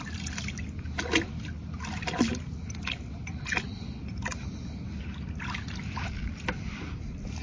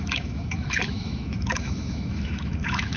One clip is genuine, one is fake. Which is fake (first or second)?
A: second